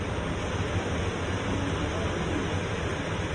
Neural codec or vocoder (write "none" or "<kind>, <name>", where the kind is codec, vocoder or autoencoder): none